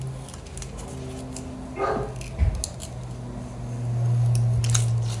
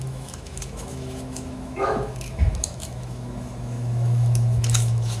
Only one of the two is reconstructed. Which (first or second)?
second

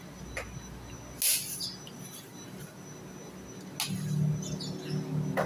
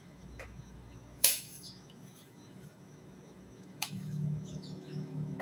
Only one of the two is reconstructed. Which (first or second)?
second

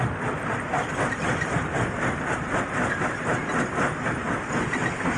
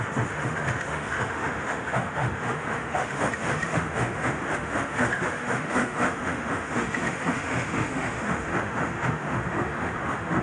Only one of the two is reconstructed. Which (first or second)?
second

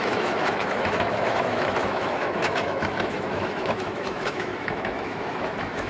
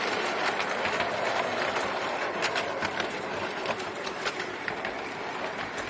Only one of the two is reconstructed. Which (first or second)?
first